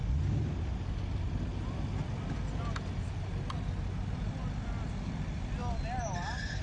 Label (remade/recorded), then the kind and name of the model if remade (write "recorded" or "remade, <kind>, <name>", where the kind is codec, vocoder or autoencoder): recorded